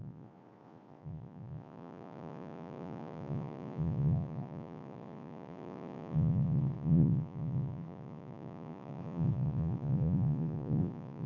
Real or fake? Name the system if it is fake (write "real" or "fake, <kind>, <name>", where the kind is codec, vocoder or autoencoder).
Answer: fake, vocoder, Vocos